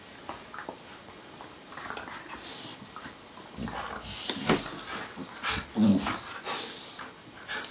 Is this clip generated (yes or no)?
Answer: no